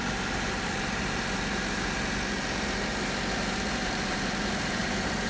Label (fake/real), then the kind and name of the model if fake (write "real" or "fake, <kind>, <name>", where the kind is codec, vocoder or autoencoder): fake, vocoder, BigVGAN v2